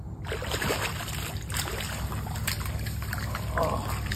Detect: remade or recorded recorded